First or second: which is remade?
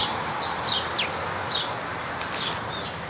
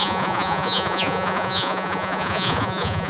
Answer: second